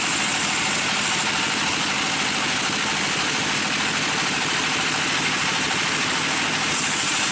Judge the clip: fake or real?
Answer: real